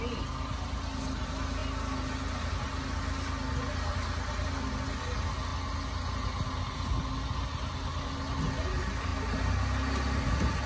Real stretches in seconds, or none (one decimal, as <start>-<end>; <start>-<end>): 0.0-10.7